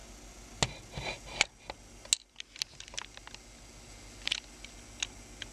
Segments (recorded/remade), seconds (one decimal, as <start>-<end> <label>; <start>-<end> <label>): 0.0-5.5 recorded